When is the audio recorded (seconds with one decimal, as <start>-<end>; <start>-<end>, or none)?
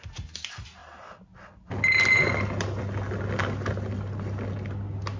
0.0-5.2